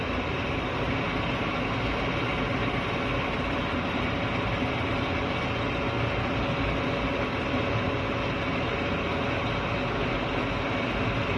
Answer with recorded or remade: recorded